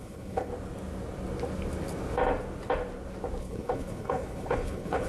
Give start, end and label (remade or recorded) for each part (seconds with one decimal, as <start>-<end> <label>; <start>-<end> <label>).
0.0-0.5 remade; 0.5-3.4 recorded; 3.4-5.1 remade

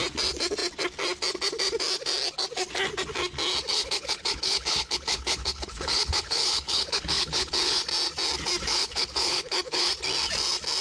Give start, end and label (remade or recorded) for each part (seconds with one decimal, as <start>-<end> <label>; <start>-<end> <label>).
0.0-3.7 recorded; 3.7-7.8 remade; 7.8-8.7 recorded; 8.7-9.9 remade; 9.9-10.8 recorded

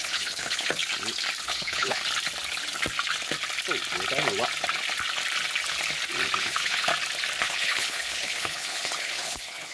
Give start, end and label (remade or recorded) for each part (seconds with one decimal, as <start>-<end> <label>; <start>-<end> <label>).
0.0-0.8 remade; 0.8-1.4 recorded; 1.4-2.0 remade; 2.0-6.4 recorded; 6.4-6.9 remade; 6.9-7.4 recorded; 7.4-9.7 remade

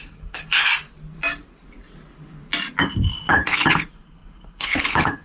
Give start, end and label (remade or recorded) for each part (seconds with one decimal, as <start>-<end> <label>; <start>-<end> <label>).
0.0-0.7 remade; 0.7-3.3 recorded; 3.3-5.2 remade

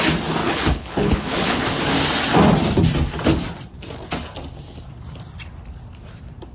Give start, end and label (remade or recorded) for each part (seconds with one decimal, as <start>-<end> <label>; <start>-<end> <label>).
0.0-0.4 recorded; 0.4-1.8 remade; 1.8-6.5 recorded